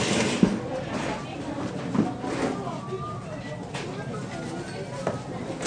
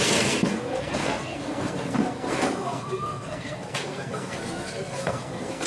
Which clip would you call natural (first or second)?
first